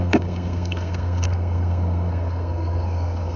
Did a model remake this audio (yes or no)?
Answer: yes